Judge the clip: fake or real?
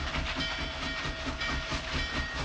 real